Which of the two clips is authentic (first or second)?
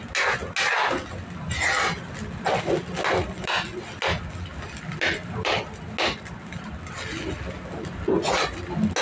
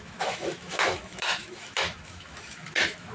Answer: first